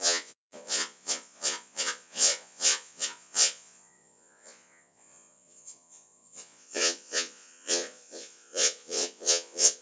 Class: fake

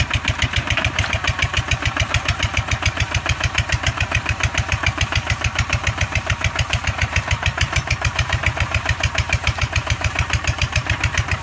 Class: fake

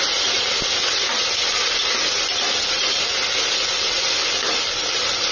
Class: real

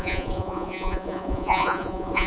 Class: fake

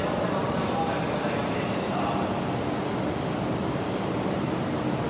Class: real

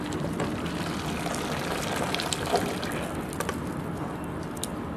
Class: fake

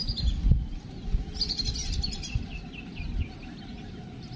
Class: real